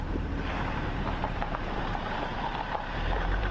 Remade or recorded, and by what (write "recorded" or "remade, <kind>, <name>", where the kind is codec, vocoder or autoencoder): remade, vocoder, BigVGAN v2